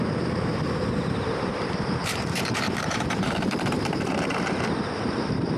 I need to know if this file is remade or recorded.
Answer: remade